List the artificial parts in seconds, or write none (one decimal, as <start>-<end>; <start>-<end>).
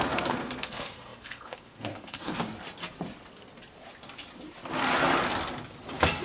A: 0.0-2.4